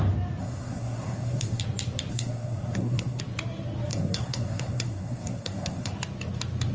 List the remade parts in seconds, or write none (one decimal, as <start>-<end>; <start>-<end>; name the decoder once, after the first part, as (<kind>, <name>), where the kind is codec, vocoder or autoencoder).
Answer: 0.4-1.6 (codec, SNAC); 2.1-3.2; 3.9-5.9